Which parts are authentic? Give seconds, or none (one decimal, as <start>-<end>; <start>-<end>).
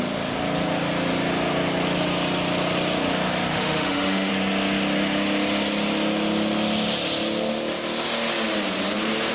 0.0-3.5; 4.3-9.3